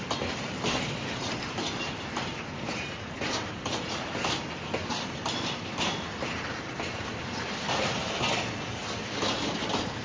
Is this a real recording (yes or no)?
yes